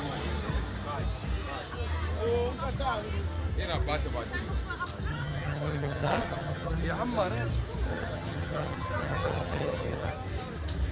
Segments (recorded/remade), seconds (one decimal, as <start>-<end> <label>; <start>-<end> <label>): 0.0-5.1 recorded; 5.1-6.7 remade; 6.7-7.9 recorded; 7.9-10.1 remade; 10.1-10.9 recorded